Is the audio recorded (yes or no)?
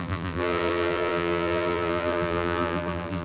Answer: no